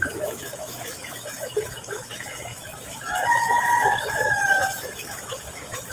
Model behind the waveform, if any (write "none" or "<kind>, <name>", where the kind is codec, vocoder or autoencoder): autoencoder, DAC-VAE